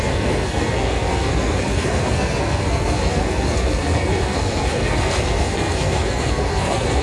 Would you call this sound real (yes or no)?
no